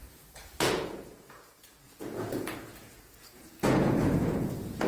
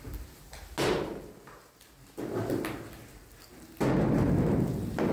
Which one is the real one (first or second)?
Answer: second